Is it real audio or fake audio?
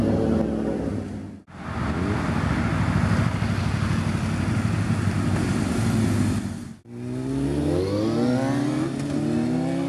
real